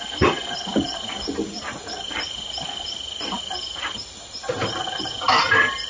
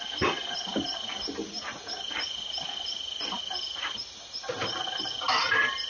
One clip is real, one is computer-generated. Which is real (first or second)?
second